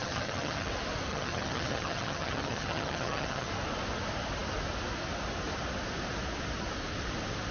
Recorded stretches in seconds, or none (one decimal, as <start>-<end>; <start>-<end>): 0.7-1.1; 3.5-7.5